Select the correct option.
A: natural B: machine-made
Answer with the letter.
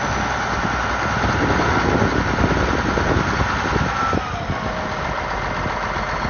A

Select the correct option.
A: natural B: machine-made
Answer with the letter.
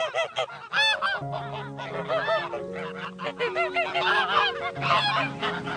A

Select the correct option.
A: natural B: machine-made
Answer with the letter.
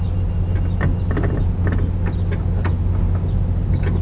A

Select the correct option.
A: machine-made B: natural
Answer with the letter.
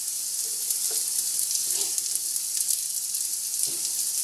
B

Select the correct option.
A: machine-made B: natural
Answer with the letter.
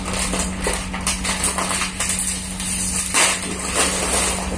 B